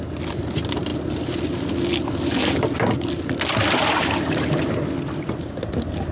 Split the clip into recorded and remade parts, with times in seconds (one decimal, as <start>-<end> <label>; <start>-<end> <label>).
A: 0.0-6.1 recorded